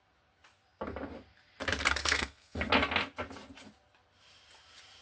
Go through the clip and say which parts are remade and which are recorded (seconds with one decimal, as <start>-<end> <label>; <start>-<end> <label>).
0.0-2.0 recorded; 2.0-2.7 remade; 2.7-5.0 recorded